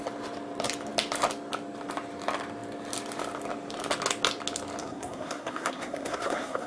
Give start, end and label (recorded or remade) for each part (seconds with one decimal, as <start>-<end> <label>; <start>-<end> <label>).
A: 0.0-4.8 recorded; 4.8-6.7 remade